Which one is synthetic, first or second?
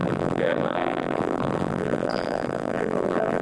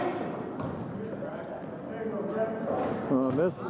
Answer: first